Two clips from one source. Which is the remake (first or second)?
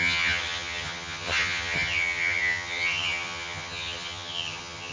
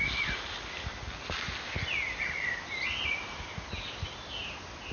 first